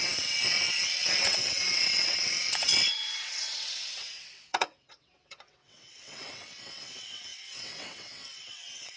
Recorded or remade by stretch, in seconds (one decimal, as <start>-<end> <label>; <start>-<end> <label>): 0.0-9.0 remade